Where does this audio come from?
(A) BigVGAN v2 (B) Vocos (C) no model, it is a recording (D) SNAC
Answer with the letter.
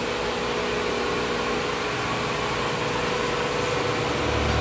C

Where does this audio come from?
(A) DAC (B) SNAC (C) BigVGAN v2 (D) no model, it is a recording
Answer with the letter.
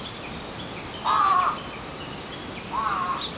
D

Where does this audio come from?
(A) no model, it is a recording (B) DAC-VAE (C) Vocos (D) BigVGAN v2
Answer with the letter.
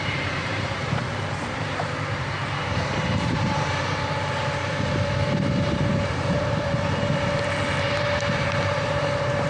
D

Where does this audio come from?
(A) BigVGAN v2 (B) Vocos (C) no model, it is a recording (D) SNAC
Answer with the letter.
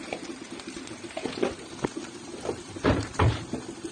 A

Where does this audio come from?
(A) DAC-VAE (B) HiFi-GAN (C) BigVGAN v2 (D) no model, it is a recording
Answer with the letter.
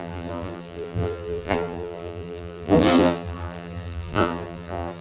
C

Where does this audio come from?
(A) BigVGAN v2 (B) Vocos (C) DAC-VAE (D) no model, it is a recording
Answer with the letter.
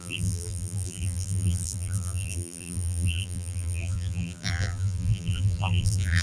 A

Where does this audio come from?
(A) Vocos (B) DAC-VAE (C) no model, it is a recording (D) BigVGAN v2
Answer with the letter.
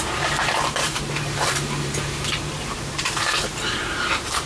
D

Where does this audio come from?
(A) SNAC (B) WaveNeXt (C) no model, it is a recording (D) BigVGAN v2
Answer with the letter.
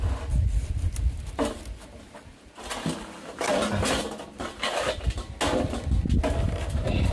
C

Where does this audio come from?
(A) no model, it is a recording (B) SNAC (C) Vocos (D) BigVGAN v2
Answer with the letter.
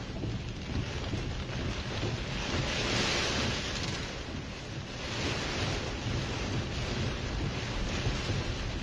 A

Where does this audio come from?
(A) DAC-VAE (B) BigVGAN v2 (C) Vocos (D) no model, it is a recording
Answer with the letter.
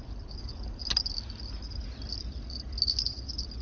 D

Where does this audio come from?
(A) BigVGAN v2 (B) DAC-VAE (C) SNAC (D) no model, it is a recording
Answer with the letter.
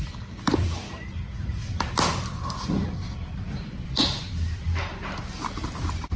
A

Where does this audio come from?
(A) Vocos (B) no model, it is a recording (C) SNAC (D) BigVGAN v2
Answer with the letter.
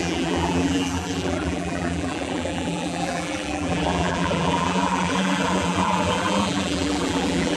D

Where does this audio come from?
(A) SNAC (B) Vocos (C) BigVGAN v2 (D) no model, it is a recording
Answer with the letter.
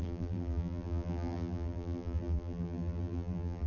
C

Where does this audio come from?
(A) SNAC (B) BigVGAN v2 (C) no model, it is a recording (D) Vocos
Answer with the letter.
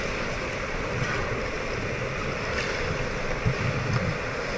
C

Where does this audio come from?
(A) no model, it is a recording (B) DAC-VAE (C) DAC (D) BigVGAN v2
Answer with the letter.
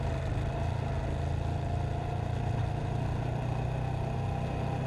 A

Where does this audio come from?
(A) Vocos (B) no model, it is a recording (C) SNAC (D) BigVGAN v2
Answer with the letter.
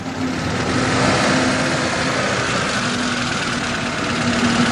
B